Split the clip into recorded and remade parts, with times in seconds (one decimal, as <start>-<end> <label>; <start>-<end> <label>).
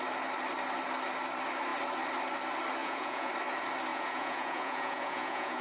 0.0-2.8 recorded; 2.8-3.3 remade; 3.3-3.9 recorded; 3.9-5.6 remade